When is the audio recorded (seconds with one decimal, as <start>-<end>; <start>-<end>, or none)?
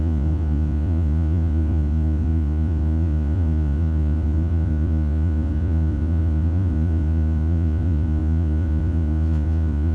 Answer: none